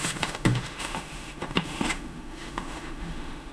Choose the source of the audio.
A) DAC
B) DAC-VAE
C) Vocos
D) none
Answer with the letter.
B